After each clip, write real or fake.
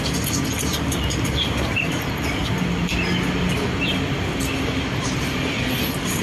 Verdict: real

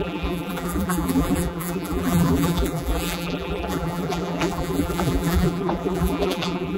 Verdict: fake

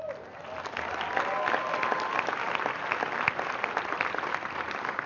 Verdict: real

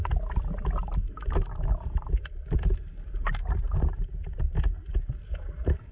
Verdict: real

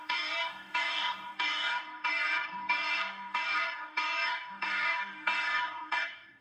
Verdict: fake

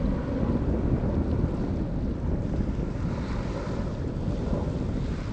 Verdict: real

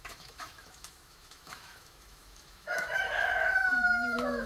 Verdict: fake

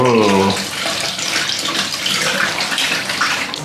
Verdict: real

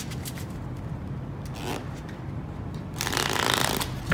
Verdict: real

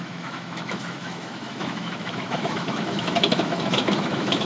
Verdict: fake